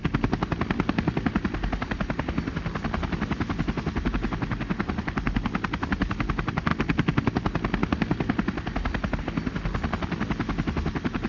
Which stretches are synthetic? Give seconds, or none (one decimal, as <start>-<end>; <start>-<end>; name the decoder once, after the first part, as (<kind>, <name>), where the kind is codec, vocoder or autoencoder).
0.0-4.1 (vocoder, BigVGAN v2)